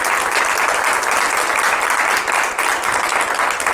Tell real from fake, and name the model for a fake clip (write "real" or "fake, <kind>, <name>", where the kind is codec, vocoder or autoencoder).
real